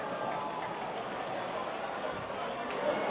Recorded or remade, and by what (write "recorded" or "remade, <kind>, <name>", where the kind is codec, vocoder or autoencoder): recorded